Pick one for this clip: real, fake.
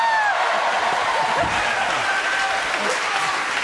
real